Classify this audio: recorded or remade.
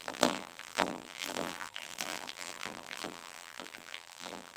remade